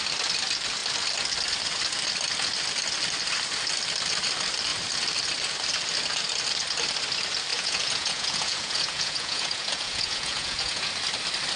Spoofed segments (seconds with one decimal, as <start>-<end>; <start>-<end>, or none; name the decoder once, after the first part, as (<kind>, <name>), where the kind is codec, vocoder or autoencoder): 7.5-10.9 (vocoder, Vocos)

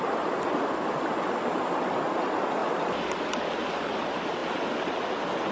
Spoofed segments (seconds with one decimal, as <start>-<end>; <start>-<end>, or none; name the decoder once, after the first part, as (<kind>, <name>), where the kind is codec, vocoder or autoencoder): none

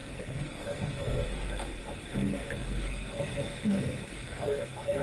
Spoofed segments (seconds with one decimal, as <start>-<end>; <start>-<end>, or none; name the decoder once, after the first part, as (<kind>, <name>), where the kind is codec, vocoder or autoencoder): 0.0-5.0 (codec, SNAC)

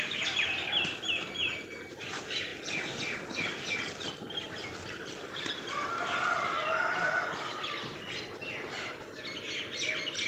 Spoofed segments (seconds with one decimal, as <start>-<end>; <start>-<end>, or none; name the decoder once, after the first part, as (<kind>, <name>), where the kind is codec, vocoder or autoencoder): 0.0-2.5 (vocoder, BigVGAN v2); 5.7-7.5; 8.5-10.3

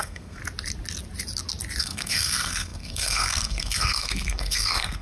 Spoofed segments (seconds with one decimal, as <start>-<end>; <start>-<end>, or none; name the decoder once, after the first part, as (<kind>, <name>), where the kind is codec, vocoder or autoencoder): 0.0-0.4 (codec, SNAC); 1.8-5.0

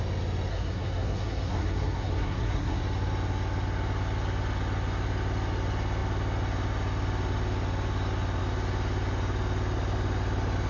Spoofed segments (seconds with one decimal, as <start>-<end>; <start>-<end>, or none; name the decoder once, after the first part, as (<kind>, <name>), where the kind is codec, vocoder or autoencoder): 0.5-2.8 (codec, SNAC)